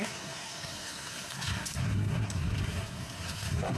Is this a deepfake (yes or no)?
yes